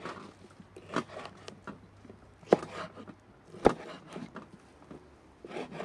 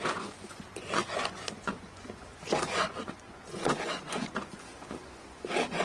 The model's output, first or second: second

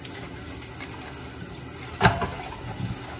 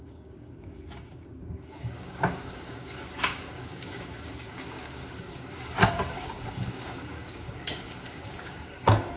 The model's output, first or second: second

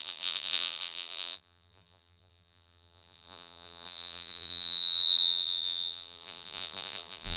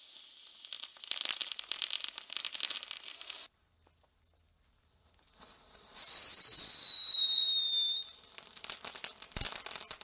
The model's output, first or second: first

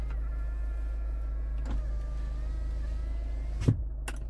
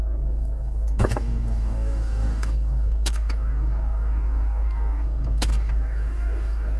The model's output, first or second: second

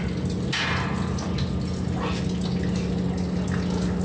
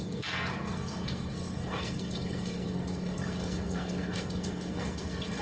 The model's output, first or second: second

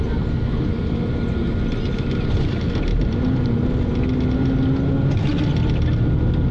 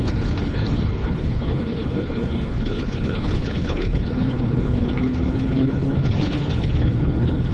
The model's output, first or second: second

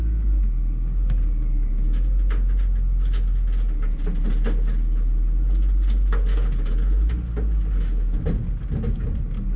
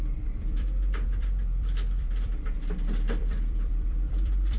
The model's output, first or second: second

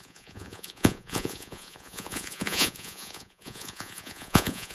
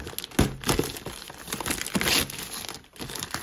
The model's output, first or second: first